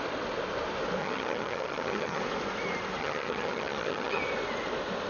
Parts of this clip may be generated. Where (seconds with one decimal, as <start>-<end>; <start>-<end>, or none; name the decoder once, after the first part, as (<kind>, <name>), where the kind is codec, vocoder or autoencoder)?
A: 1.0-2.2 (vocoder, HiFi-GAN); 3.0-4.2